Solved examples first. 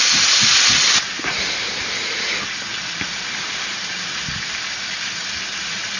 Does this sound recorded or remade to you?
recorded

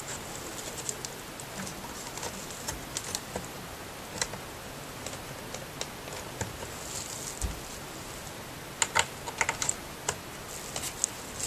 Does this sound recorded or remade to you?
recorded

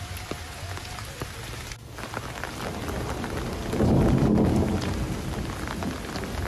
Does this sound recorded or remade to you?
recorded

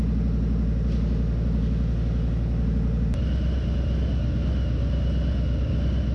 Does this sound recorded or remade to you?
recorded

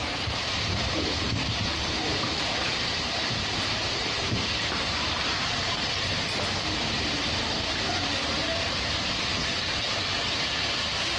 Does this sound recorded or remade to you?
remade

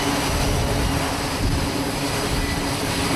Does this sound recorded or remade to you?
recorded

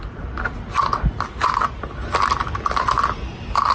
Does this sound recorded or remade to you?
recorded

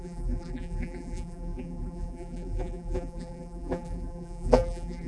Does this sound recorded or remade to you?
remade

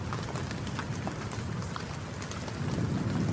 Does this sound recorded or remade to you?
recorded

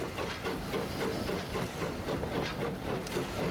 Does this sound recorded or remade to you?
recorded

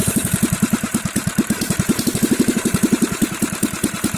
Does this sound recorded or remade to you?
remade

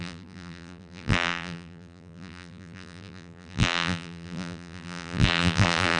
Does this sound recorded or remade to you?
remade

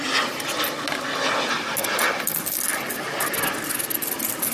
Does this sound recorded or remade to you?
recorded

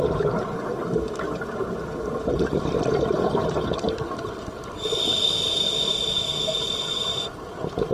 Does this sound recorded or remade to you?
recorded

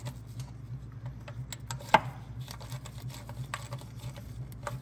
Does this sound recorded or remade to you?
recorded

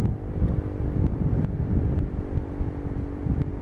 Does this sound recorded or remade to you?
remade